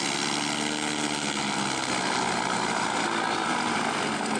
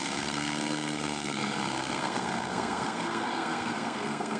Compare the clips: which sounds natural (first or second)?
first